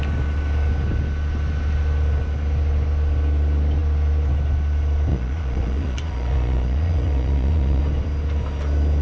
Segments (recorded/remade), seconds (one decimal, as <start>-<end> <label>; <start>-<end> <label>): 0.0-5.1 recorded; 5.1-7.8 remade; 7.8-9.0 recorded